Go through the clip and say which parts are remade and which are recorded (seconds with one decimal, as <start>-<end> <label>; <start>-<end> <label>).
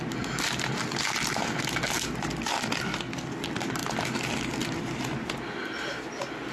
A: 0.0-6.5 recorded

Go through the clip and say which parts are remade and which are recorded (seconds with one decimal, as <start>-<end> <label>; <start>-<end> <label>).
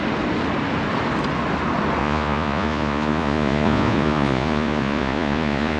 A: 0.0-2.0 recorded; 2.0-5.8 remade